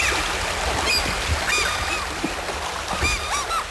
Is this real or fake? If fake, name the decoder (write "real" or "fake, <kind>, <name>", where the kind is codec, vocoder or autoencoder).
real